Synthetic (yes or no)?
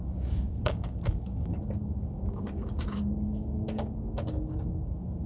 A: yes